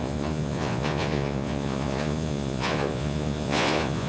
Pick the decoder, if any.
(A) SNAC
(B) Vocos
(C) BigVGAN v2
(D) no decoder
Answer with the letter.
B